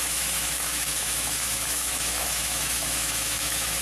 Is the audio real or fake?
fake